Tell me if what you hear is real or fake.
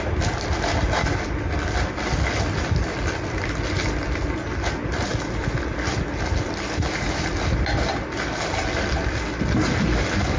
real